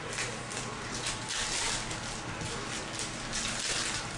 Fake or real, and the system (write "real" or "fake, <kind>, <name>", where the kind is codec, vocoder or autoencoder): real